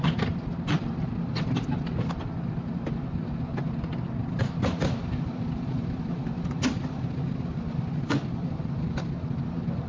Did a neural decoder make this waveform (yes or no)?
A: no